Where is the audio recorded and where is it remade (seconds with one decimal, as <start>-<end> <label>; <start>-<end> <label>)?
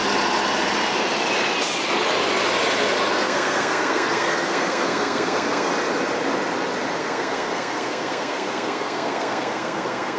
0.0-3.1 recorded; 3.1-5.7 remade; 5.7-7.0 recorded; 7.0-10.2 remade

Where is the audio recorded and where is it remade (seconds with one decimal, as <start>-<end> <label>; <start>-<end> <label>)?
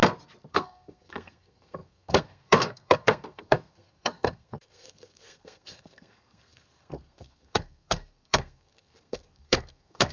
0.0-0.5 recorded; 0.5-10.1 remade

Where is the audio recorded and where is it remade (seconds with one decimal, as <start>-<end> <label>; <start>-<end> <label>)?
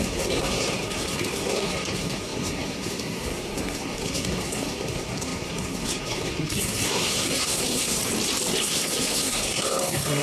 0.0-8.0 remade; 8.0-8.6 recorded; 8.6-10.2 remade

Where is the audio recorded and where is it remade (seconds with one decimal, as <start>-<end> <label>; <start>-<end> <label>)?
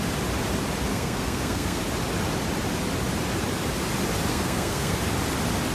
0.0-0.9 recorded; 0.9-1.8 remade; 1.8-4.3 recorded; 4.3-5.0 remade; 5.0-5.7 recorded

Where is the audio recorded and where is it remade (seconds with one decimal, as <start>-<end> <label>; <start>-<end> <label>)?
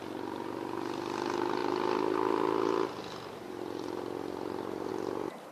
0.0-5.5 recorded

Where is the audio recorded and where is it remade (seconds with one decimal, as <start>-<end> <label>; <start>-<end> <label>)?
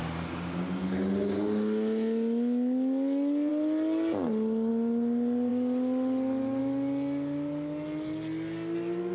0.0-9.1 recorded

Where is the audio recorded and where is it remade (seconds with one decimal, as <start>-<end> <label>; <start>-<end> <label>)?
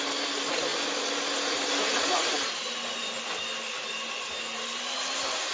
0.0-5.5 recorded